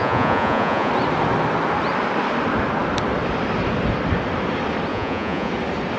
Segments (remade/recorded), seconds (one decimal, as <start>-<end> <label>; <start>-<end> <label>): 0.0-0.9 remade; 0.9-4.9 recorded; 4.9-5.5 remade; 5.5-6.0 recorded